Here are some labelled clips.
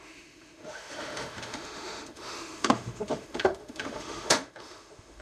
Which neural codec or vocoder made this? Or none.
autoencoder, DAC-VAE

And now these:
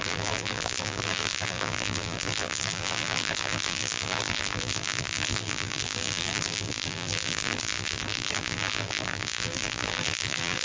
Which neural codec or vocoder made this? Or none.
vocoder, BigVGAN v2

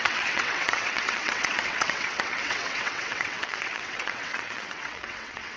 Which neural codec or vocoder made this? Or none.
vocoder, WaveNeXt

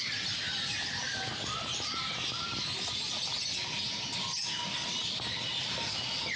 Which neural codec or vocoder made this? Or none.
none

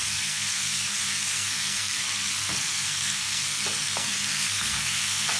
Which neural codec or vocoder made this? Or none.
codec, SNAC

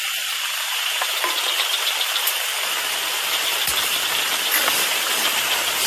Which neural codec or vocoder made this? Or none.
vocoder, BigVGAN v2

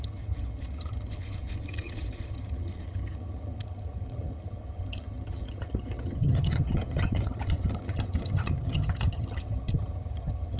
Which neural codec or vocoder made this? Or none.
vocoder, HiFi-GAN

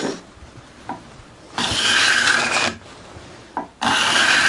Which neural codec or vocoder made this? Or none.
none